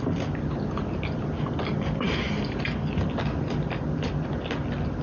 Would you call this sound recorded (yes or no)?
yes